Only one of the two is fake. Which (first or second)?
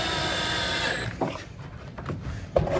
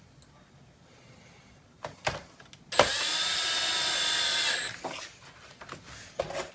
first